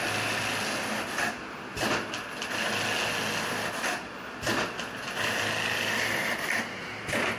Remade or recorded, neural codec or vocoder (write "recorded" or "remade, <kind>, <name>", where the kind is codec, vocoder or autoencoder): recorded